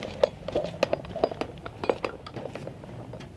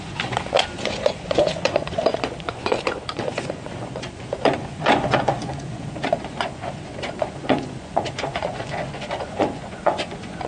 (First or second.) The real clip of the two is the first